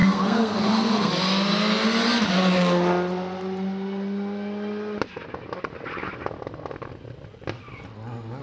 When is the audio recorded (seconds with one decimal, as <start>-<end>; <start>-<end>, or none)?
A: 1.1-8.4